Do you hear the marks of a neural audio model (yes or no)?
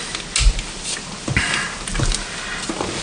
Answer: no